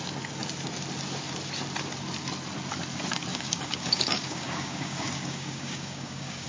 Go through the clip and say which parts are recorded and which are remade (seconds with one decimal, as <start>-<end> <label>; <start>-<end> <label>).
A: 0.0-3.3 recorded; 3.3-6.5 remade